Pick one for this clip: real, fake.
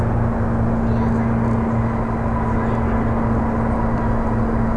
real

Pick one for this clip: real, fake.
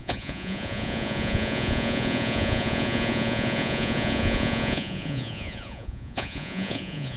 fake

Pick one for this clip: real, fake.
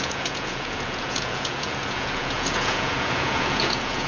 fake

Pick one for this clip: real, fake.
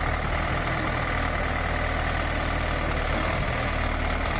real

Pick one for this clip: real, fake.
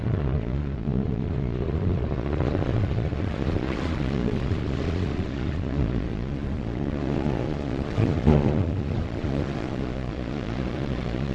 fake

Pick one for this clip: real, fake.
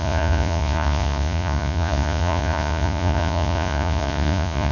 fake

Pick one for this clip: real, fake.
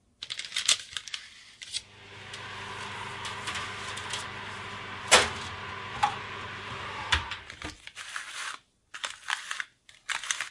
real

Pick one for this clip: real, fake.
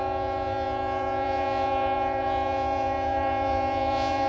fake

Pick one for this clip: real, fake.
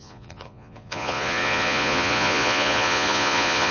fake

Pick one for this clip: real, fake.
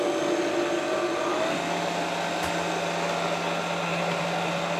real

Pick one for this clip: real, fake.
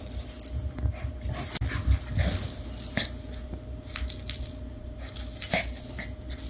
real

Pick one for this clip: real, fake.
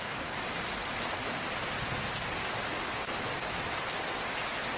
real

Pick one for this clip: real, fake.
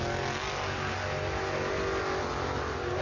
real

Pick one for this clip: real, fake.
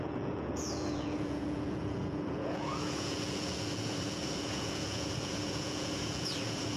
fake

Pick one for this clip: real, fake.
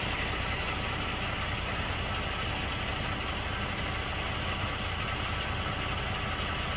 real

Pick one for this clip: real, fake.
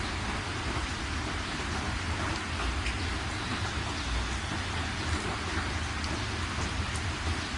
real